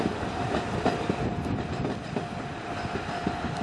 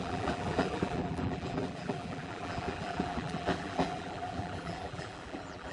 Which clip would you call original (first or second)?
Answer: first